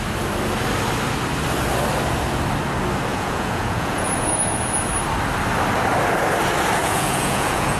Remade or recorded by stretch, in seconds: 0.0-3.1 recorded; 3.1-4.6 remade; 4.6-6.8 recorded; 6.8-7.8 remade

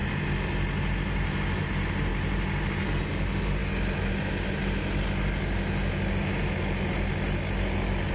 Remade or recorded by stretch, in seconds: 0.0-8.1 recorded

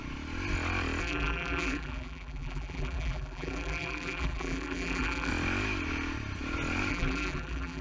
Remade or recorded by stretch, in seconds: 0.0-1.0 recorded; 1.0-5.3 remade; 5.3-6.9 recorded; 6.9-7.8 remade